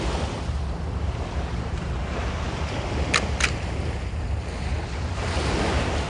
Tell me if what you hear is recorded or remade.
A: recorded